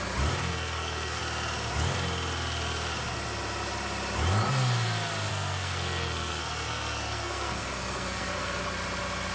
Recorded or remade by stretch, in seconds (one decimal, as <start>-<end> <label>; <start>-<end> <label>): 0.0-0.4 recorded; 0.4-1.2 remade; 1.2-5.3 recorded; 5.3-8.6 remade; 8.6-9.3 recorded